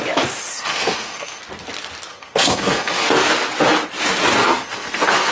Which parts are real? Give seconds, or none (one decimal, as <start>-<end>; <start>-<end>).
0.0-0.5; 1.4-2.1; 3.3-4.4